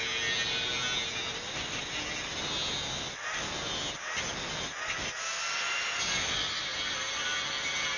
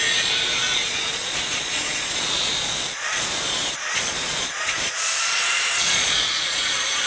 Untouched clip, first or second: first